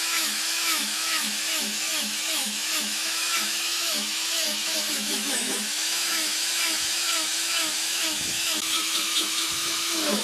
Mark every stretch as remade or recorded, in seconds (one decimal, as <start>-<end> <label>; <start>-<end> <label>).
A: 0.0-10.2 remade